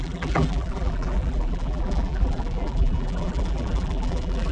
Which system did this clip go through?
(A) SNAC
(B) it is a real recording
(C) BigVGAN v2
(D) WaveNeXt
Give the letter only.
C